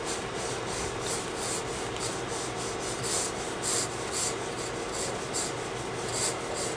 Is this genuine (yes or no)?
yes